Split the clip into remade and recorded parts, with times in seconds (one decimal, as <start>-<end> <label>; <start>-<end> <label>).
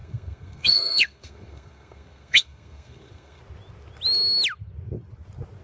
0.0-3.4 remade; 3.4-5.6 recorded